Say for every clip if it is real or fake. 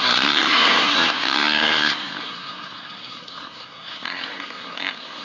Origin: fake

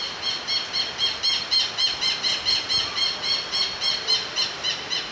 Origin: real